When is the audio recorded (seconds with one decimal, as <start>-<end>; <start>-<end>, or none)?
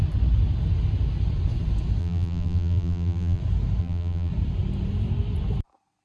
0.0-2.0; 3.4-3.8; 4.3-6.0